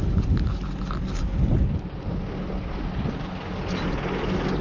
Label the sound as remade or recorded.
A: recorded